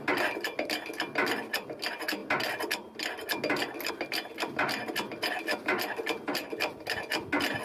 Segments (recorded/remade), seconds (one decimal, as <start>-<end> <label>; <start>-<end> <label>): 0.0-7.6 recorded